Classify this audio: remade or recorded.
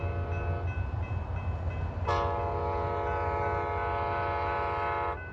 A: recorded